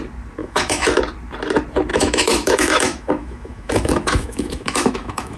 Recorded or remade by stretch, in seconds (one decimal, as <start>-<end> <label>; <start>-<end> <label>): 0.0-0.4 recorded; 0.4-1.0 remade; 1.0-1.9 recorded; 1.9-5.4 remade